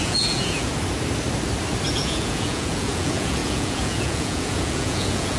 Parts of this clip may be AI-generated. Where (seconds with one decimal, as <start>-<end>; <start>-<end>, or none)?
0.0-0.7; 1.9-5.4